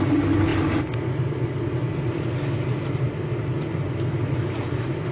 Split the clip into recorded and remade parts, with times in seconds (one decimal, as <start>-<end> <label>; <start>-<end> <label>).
0.0-5.1 recorded